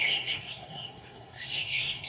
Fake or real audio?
fake